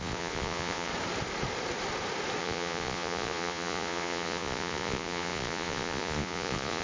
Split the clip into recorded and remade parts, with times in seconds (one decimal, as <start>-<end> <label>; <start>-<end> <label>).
0.0-0.9 remade; 0.9-2.4 recorded; 2.4-6.8 remade